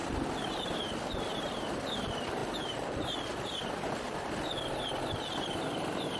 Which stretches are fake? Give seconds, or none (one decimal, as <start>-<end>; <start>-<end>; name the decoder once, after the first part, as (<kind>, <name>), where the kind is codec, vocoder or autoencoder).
2.4-6.2 (vocoder, BigVGAN v2)